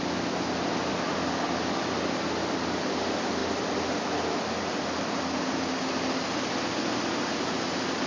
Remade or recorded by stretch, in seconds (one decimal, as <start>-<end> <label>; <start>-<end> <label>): 0.0-8.1 recorded